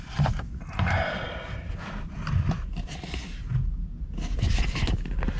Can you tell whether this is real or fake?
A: real